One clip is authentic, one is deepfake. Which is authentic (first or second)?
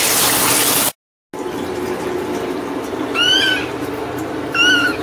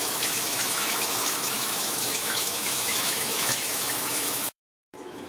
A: first